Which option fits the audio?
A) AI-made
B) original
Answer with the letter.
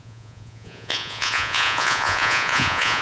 A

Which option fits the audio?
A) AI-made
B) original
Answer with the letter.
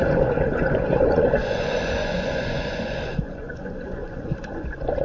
A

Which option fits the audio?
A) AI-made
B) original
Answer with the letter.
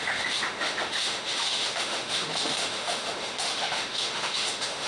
A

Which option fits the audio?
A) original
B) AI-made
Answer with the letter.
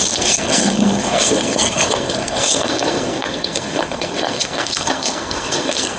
B